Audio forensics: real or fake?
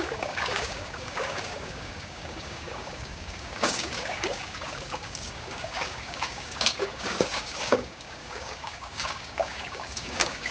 fake